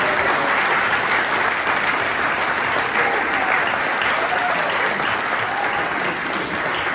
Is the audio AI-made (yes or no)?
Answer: no